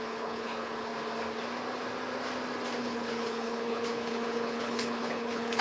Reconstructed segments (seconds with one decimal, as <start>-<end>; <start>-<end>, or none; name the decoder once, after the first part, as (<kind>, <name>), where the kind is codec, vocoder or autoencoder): 0.0-0.9 (codec, HILCodec); 2.8-5.6